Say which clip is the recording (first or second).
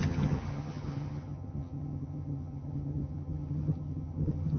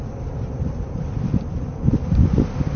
second